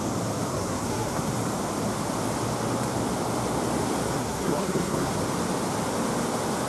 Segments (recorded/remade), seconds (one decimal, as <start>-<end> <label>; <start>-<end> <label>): 0.0-0.5 recorded; 0.5-1.3 remade; 1.3-4.1 recorded; 4.1-5.1 remade; 5.1-6.7 recorded